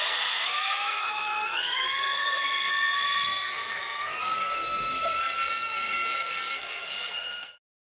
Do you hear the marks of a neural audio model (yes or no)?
yes